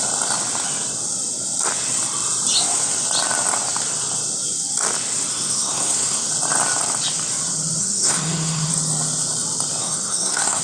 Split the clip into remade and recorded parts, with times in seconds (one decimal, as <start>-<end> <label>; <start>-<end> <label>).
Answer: 0.0-5.3 recorded; 5.3-6.3 remade; 6.3-7.8 recorded; 7.8-8.7 remade; 8.7-9.8 recorded; 9.8-10.6 remade